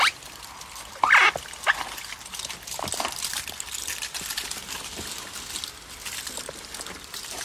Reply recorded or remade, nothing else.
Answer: recorded